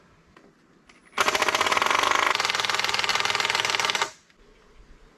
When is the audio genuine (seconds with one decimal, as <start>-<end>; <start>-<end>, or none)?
0.0-1.0; 2.2-3.1; 4.8-5.2